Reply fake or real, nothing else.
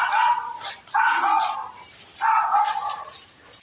real